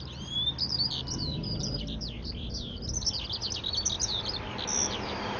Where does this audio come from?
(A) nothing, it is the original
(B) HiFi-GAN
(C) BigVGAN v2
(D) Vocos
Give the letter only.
A